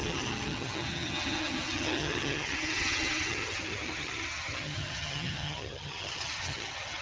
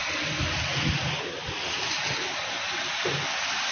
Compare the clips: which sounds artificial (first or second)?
first